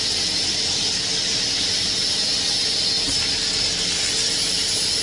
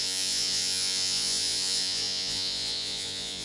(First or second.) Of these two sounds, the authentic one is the first